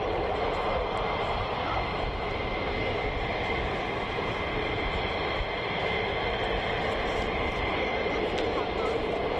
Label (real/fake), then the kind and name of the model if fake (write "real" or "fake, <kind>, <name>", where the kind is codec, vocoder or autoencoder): real